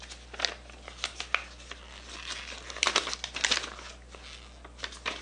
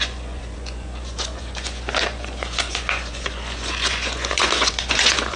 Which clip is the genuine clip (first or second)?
first